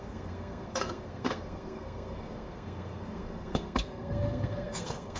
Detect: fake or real fake